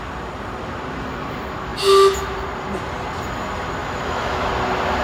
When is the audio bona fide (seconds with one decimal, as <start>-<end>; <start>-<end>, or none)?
0.0-3.8; 4.5-5.0